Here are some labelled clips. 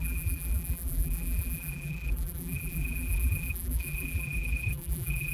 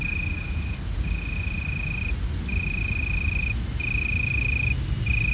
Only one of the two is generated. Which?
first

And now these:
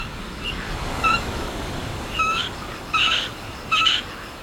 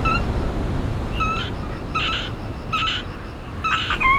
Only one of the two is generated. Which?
first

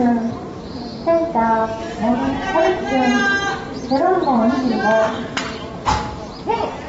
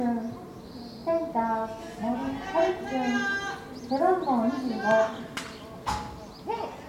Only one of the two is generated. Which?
first